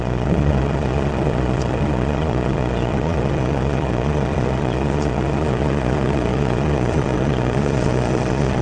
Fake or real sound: fake